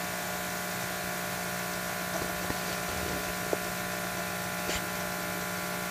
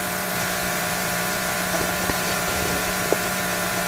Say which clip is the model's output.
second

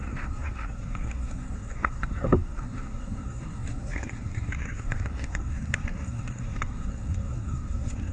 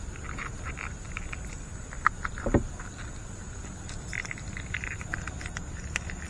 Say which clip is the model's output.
first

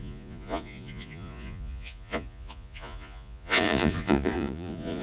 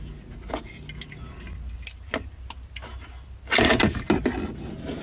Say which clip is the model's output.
first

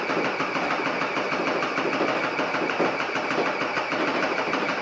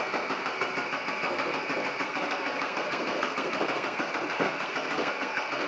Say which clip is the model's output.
second